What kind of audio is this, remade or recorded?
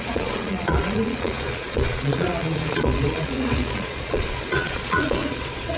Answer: remade